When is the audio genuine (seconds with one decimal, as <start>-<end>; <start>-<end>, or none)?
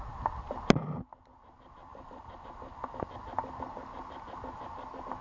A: 0.0-1.9; 3.1-5.2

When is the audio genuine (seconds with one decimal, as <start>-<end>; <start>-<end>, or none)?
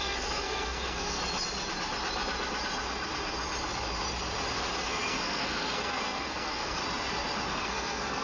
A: 1.2-4.9; 6.8-7.5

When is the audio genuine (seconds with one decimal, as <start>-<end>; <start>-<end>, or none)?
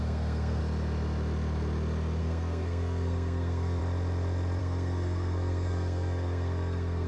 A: 0.6-2.2; 3.8-4.6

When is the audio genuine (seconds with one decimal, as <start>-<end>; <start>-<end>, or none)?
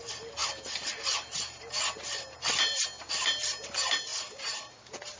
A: 0.0-4.1; 4.6-5.2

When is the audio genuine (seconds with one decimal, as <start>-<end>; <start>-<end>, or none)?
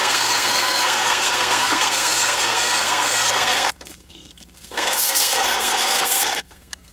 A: none